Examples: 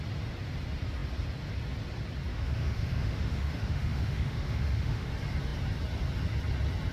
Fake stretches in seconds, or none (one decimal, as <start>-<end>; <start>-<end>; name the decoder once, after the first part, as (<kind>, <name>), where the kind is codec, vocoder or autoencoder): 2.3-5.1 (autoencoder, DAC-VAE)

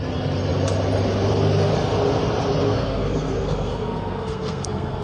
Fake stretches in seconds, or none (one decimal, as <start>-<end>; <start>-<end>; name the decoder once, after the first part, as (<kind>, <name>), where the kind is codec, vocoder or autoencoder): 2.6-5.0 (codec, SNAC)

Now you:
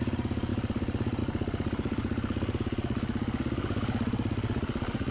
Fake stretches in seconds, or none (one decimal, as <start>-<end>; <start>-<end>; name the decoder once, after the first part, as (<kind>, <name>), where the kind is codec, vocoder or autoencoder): none